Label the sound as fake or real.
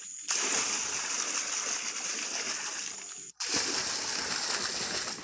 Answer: real